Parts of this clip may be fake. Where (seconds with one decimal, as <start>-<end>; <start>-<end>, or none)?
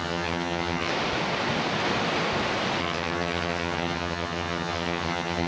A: 0.0-0.9; 2.8-5.5